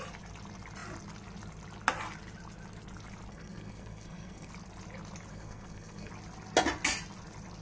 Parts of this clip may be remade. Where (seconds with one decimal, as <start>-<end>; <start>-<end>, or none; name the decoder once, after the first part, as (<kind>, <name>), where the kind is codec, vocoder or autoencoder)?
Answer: 3.3-4.5 (codec, SNAC); 5.3-6.1